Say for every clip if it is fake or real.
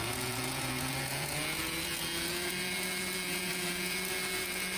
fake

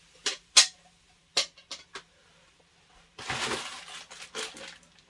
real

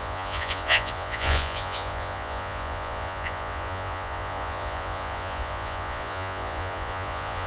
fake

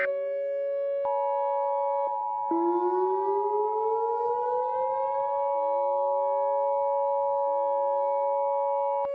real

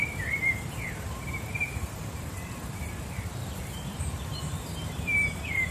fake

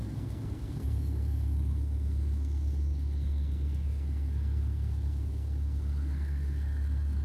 fake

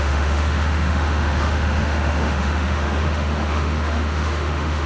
fake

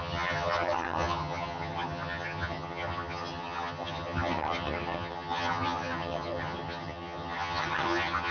fake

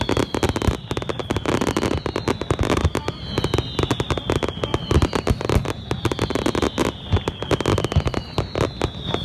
real